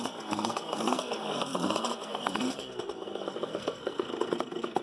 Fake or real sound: fake